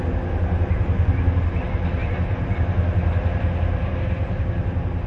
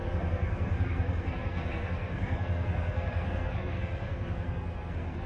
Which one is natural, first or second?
first